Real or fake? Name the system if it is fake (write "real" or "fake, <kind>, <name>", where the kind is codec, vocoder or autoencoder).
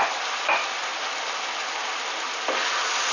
real